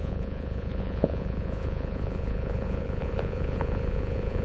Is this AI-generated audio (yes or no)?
yes